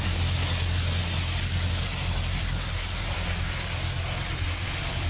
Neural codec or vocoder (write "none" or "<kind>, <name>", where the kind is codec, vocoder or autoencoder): none